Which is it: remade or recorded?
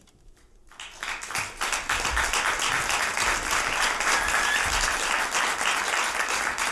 recorded